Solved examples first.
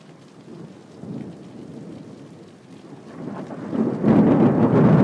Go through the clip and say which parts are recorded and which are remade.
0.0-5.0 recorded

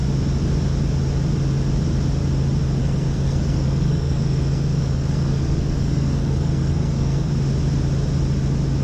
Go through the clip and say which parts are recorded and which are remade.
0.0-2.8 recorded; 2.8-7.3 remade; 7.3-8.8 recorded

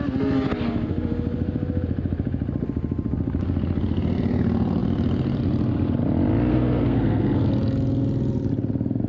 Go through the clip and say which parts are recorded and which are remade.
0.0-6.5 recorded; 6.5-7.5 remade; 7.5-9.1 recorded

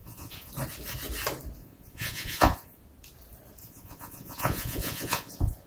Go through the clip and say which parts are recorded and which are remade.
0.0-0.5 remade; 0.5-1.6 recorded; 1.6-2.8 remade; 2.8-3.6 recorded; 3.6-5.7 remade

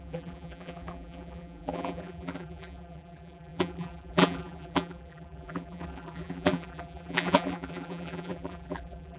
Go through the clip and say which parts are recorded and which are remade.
0.0-9.2 remade

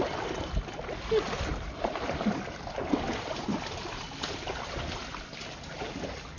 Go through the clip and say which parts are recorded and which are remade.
0.0-6.4 recorded

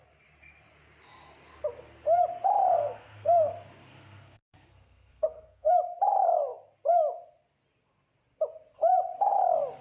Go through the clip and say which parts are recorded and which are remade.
0.0-2.7 recorded; 2.7-3.5 remade; 3.5-3.9 recorded; 3.9-5.7 remade; 5.7-9.8 recorded